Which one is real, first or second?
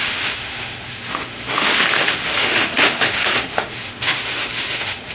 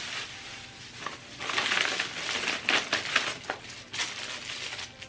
second